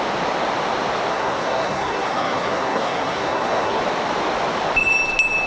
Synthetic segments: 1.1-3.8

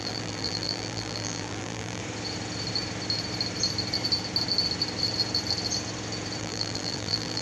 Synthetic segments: 0.0-2.0; 6.4-7.4

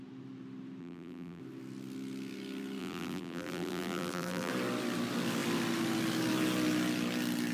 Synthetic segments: 0.8-1.4; 2.8-4.5

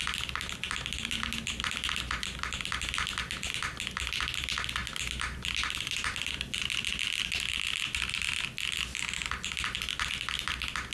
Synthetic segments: none

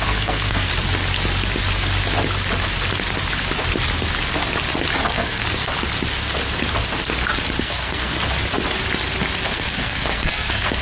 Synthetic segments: 0.0-0.7; 5.0-5.4; 7.6-8.1; 9.4-10.8

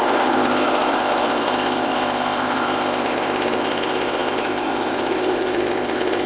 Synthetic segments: 0.0-6.3